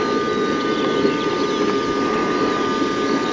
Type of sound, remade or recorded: recorded